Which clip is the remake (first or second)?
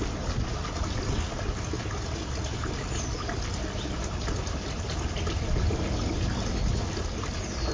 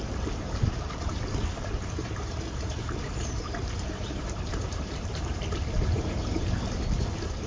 second